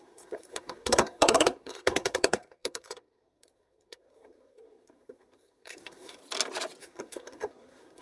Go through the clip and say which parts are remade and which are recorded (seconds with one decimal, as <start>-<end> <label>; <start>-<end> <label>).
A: 0.0-6.2 remade; 6.2-6.8 recorded; 6.8-8.0 remade